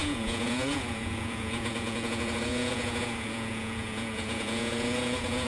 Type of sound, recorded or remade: remade